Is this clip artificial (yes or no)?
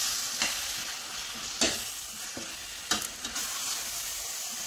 no